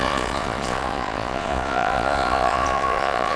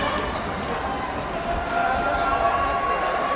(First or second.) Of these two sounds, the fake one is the first